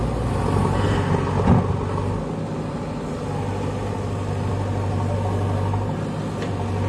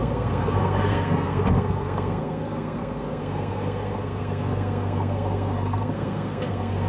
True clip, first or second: first